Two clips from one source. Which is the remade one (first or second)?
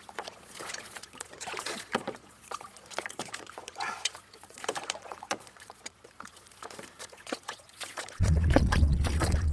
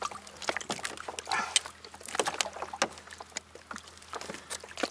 first